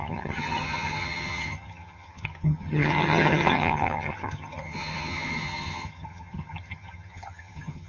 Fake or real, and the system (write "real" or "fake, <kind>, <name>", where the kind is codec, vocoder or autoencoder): fake, vocoder, HiFi-GAN